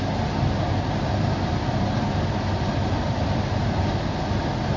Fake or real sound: real